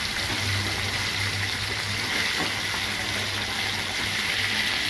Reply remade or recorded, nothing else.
recorded